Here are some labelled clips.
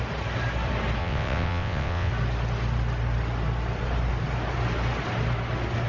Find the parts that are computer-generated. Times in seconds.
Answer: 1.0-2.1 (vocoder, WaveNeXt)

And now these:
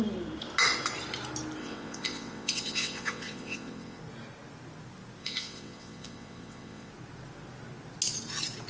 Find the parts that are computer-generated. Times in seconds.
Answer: 1.6-4.0 (vocoder, WaveNeXt); 5.2-6.9

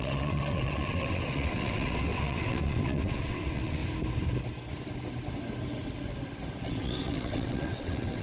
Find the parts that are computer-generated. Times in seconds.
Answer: 0.0-3.8 (vocoder, WaveNeXt); 6.6-8.2

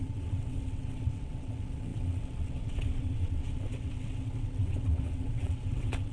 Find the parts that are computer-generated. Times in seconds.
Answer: 0.0-6.1 (vocoder, WaveNeXt)

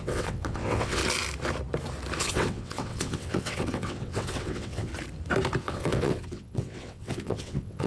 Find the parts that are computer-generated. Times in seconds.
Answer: 0.0-1.0 (vocoder, WaveNeXt); 2.2-4.9; 5.6-7.9